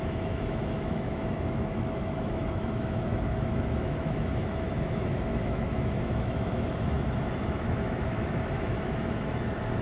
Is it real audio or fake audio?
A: fake